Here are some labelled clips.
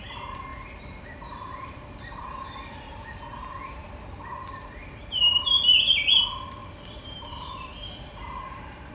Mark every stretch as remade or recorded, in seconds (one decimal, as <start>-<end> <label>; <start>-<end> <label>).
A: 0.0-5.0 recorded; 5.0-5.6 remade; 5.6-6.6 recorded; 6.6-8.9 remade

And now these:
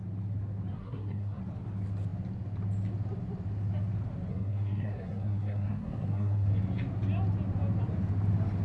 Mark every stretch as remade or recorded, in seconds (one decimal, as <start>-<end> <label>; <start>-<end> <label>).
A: 0.0-0.7 recorded; 0.7-1.4 remade; 1.4-4.3 recorded; 4.3-6.5 remade; 6.5-8.6 recorded

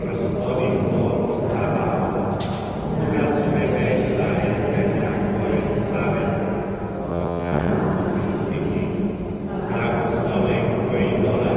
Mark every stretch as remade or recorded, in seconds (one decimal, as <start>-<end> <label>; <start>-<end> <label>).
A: 0.0-7.1 recorded; 7.1-7.7 remade; 7.7-11.6 recorded

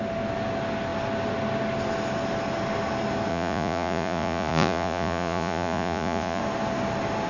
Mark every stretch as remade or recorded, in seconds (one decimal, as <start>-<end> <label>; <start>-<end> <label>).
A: 0.0-3.3 recorded; 3.3-6.4 remade; 6.4-7.3 recorded

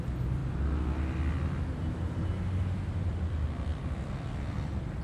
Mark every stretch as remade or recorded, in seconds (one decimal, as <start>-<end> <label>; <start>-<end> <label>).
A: 0.0-5.0 recorded

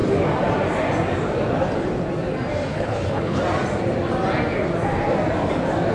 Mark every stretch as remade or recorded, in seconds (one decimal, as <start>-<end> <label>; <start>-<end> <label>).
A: 0.0-2.7 recorded; 2.7-3.4 remade; 3.4-5.9 recorded